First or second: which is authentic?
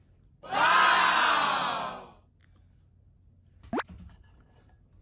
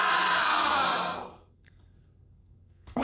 first